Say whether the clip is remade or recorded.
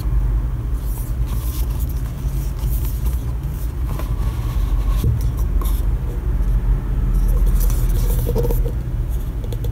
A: recorded